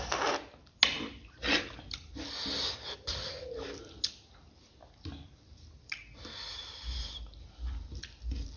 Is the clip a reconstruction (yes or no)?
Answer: no